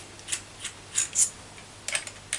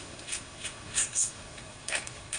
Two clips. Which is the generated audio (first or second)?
second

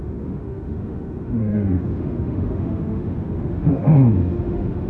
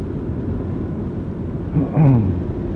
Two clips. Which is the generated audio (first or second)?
first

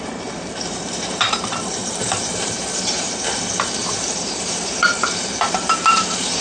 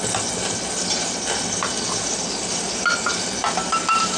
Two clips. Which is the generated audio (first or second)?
first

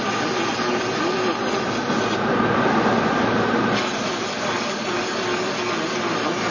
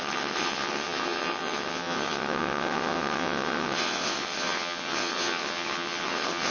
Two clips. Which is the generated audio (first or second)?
second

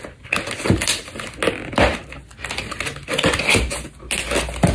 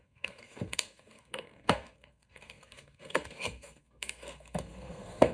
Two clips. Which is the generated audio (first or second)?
second